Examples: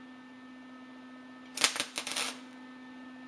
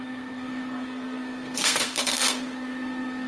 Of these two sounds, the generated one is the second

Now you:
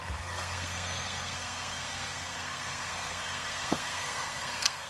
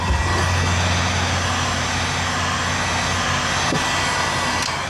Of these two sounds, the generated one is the first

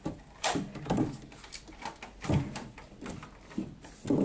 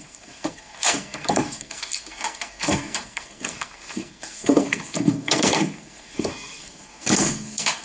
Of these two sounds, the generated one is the second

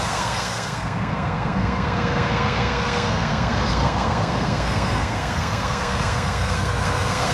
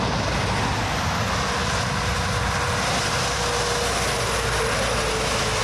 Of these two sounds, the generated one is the first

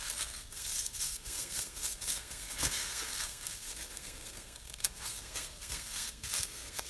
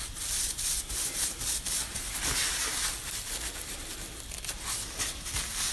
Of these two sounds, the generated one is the first